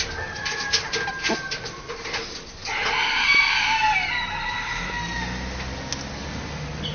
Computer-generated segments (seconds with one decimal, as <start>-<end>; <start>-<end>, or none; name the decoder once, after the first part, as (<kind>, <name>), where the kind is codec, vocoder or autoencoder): none